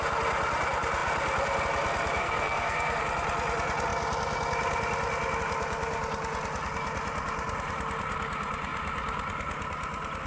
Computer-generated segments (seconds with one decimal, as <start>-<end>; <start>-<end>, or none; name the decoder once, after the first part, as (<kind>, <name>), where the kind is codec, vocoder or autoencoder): 2.2-3.0 (codec, SNAC)